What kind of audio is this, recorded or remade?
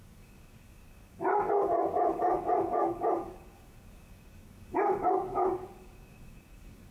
remade